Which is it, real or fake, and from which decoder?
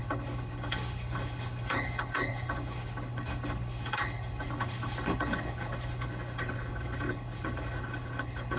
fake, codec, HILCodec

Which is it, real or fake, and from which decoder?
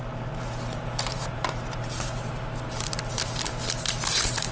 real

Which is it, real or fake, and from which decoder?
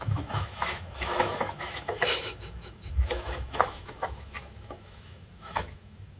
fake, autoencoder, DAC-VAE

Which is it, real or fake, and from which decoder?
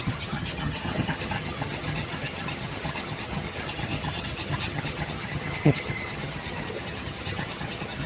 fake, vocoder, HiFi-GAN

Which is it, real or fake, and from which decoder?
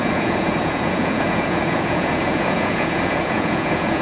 fake, vocoder, Vocos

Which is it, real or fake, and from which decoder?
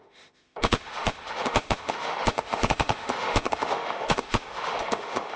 fake, autoencoder, DAC-VAE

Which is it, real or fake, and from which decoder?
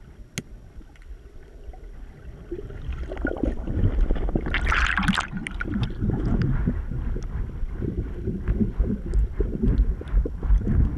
real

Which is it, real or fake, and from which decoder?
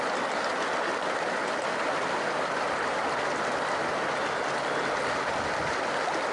real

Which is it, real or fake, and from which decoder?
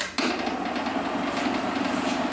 real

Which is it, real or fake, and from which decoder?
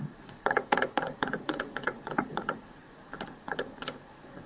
fake, vocoder, Vocos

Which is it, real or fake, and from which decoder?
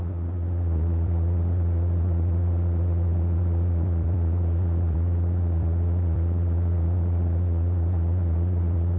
fake, vocoder, Vocos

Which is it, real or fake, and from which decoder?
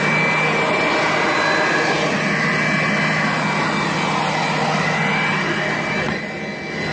real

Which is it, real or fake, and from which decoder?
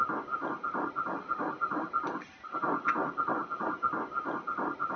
real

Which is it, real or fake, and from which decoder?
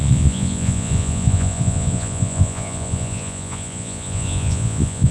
fake, vocoder, Vocos